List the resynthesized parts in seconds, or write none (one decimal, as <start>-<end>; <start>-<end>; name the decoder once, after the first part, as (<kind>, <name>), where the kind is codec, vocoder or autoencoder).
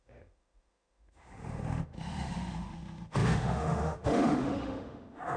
0.0-5.4 (autoencoder, DAC-VAE)